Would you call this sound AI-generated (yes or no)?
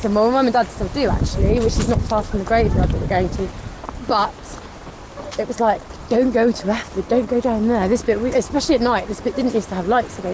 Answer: no